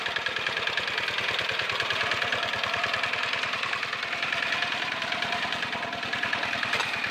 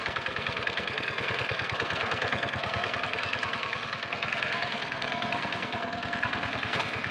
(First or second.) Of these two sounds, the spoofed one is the second